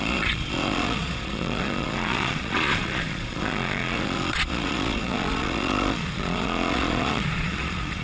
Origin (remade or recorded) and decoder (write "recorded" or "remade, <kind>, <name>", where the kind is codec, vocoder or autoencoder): remade, vocoder, Vocos